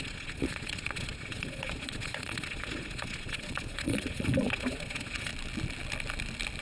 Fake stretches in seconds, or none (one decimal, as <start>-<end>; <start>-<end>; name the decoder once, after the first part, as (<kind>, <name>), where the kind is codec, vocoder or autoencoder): 0.0-5.3 (vocoder, Vocos)

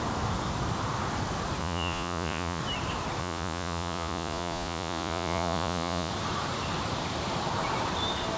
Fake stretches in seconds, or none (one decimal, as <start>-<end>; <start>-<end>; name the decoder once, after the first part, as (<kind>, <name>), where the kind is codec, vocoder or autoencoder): 1.6-2.6 (vocoder, Vocos); 3.2-6.1

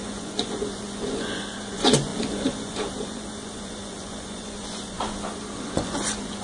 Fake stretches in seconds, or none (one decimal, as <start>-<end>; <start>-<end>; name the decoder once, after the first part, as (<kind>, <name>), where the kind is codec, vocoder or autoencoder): 0.0-6.4 (vocoder, Vocos)

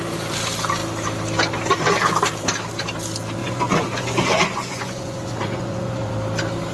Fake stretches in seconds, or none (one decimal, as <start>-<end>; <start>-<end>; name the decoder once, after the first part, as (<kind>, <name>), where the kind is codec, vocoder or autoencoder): 3.4-6.1 (vocoder, Vocos)